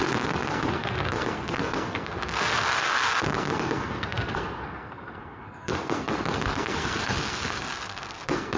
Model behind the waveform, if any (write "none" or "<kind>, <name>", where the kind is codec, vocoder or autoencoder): codec, SNAC